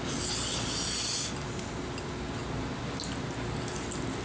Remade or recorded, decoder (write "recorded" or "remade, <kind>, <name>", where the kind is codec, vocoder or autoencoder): recorded